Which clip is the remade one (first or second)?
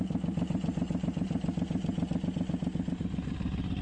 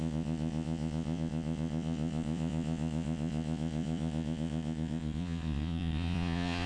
second